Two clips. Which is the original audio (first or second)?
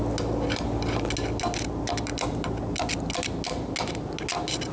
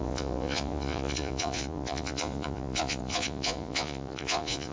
first